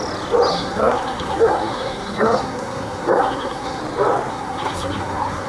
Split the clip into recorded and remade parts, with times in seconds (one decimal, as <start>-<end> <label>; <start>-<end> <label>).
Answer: 0.0-0.5 recorded; 0.5-3.8 remade; 3.8-4.3 recorded; 4.3-5.5 remade